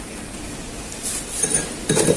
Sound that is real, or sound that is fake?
real